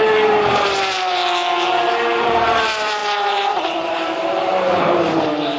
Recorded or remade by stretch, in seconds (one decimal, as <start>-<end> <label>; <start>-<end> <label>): 0.0-1.2 remade; 1.2-1.8 recorded; 1.8-5.6 remade